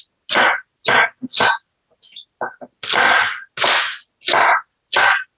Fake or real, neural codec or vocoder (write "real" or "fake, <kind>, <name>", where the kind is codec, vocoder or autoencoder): real